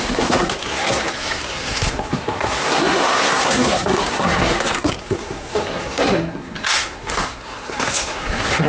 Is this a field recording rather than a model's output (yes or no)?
no